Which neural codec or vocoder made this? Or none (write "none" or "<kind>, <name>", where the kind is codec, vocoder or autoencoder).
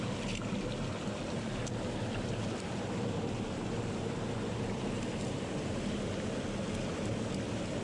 none